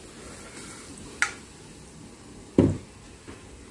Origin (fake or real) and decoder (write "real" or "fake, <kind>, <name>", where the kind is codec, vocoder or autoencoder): real